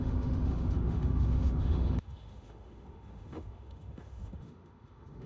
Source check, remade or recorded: remade